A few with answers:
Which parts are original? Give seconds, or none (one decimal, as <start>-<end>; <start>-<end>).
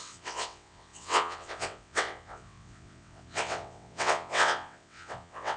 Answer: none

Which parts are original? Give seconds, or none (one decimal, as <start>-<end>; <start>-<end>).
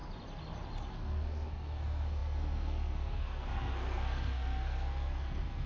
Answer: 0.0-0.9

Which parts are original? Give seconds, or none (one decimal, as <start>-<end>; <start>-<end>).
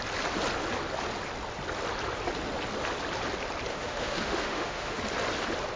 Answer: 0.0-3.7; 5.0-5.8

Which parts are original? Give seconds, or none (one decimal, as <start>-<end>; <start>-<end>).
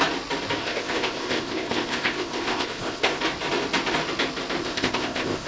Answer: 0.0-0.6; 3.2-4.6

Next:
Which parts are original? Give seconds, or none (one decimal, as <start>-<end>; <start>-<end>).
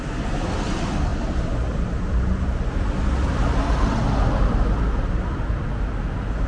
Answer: 0.0-6.5